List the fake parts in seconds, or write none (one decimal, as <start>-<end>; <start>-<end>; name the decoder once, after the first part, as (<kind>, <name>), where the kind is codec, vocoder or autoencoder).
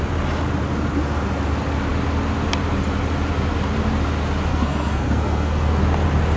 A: 4.5-5.8 (codec, SNAC)